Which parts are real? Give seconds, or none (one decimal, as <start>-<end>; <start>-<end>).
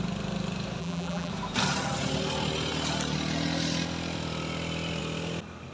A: 0.0-0.8; 1.3-5.7